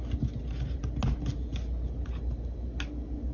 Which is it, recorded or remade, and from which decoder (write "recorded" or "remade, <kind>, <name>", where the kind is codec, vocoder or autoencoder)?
recorded